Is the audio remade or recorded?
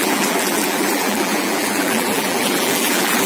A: remade